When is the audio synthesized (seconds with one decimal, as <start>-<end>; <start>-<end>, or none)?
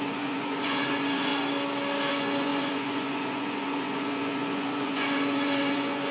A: 0.0-1.3; 2.1-6.1